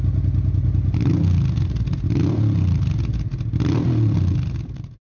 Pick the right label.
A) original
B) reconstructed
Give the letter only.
A